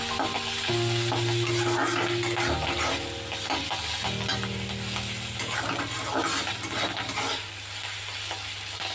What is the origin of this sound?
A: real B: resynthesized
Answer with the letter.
A